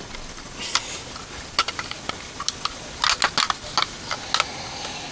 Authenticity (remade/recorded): recorded